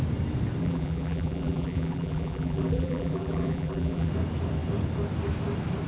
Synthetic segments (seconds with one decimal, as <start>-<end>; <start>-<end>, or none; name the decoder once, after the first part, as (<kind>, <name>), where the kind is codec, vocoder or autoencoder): 0.6-4.1 (vocoder, BigVGAN v2)